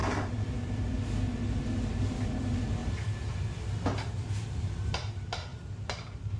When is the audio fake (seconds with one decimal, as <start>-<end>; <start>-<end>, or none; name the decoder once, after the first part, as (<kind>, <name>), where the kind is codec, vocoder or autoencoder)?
none